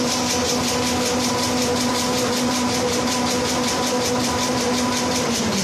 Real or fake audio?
real